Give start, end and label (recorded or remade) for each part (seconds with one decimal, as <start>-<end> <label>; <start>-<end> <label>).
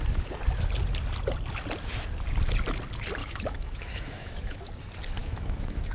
0.0-3.2 recorded; 3.2-4.7 remade; 4.7-5.2 recorded; 5.2-5.9 remade